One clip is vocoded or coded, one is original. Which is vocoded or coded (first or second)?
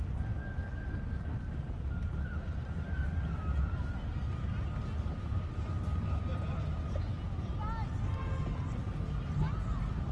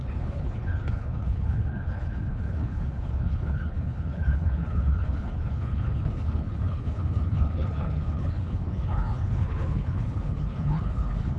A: second